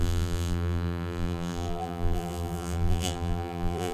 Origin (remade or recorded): remade